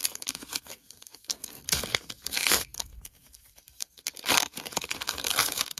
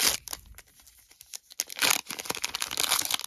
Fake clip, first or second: first